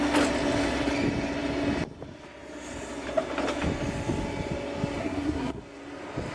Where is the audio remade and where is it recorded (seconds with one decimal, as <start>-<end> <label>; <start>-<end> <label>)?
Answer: 0.0-5.0 recorded; 5.0-5.6 remade; 5.6-6.3 recorded